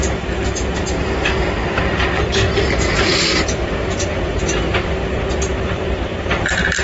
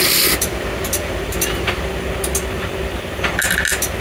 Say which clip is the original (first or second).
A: second